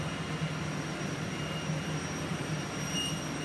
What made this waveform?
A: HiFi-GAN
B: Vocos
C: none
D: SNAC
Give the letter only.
C